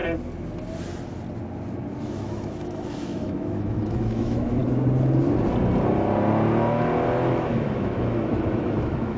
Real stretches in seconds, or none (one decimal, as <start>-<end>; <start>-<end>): 0.0-2.0; 4.6-7.3